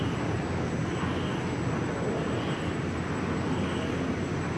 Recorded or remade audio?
recorded